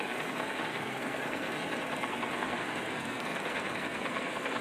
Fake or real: fake